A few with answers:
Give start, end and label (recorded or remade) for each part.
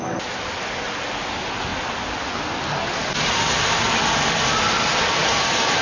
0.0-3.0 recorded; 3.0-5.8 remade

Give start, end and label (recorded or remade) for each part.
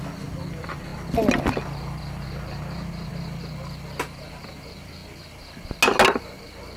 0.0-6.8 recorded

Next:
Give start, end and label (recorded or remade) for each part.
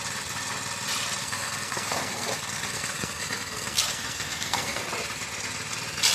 0.0-1.2 recorded; 1.2-4.9 remade; 4.9-6.1 recorded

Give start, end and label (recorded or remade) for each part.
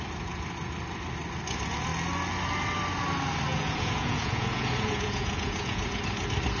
0.0-3.5 recorded; 3.5-6.0 remade; 6.0-6.6 recorded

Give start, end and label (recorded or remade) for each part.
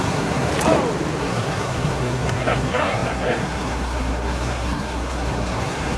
0.0-0.5 remade; 0.5-1.2 recorded; 1.2-6.0 remade